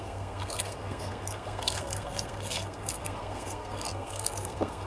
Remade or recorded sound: remade